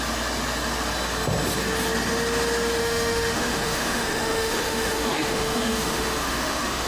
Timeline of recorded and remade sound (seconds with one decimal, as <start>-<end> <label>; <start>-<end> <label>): 0.0-2.8 recorded; 2.8-6.9 remade

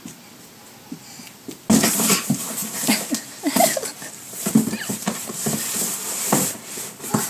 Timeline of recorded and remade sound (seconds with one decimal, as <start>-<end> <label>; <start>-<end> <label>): 0.0-7.3 recorded

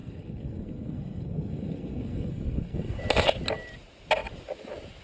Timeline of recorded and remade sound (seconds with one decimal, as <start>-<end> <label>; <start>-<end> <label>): 0.0-3.0 remade; 3.0-5.0 recorded

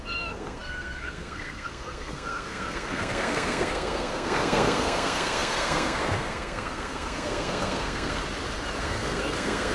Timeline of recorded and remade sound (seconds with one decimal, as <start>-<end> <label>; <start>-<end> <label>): 0.0-8.2 remade; 8.2-8.8 recorded; 8.8-9.7 remade

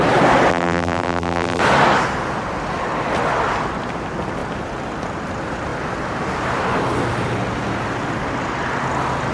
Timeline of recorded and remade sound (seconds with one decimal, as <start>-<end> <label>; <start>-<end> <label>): 0.0-0.5 recorded; 0.5-1.6 remade; 1.6-9.3 recorded